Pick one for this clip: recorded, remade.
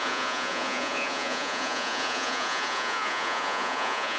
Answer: remade